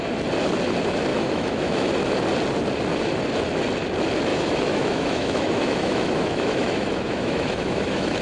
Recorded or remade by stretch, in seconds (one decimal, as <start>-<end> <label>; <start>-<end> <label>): 0.0-1.1 recorded; 1.1-1.9 remade; 1.9-4.3 recorded; 4.3-8.2 remade